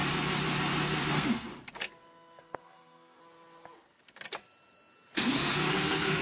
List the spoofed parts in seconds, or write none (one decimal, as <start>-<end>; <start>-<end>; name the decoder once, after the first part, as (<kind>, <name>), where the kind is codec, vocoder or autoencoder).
1.1-1.5 (codec, SNAC); 2.4-3.2; 5.7-6.2